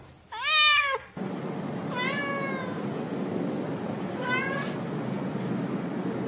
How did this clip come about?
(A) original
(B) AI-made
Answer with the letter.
A